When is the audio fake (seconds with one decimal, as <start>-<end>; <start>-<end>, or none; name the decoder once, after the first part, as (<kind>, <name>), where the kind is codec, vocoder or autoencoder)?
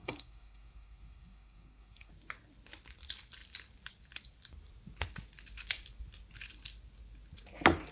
0.0-2.1 (codec, SNAC)